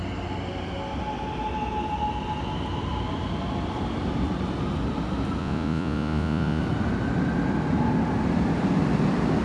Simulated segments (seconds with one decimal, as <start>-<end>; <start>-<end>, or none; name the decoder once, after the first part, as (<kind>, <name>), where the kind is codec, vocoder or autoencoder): 5.4-6.6 (vocoder, Vocos)